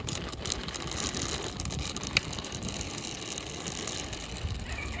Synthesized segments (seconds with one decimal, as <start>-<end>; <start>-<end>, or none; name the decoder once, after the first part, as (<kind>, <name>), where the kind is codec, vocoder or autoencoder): none